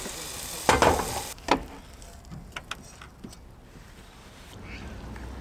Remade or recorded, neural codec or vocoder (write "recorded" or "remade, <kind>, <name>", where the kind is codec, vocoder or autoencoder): recorded